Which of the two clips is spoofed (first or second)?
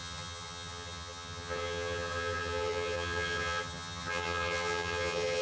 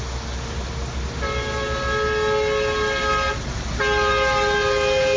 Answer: first